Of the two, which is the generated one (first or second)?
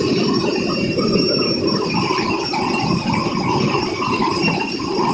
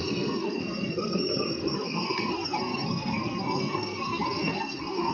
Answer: second